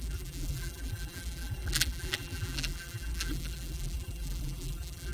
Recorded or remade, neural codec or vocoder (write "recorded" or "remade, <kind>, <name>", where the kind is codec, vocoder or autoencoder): remade, vocoder, BigVGAN v2